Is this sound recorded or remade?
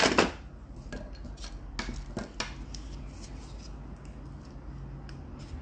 recorded